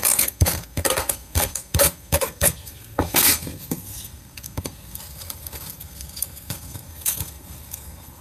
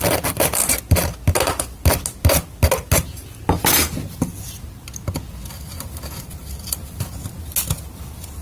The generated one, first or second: first